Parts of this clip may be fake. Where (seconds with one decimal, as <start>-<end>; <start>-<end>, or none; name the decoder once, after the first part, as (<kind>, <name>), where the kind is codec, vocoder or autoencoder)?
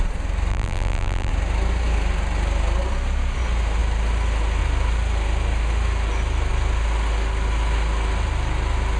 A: 0.5-1.3 (vocoder, BigVGAN v2)